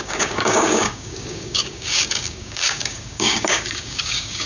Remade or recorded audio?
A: remade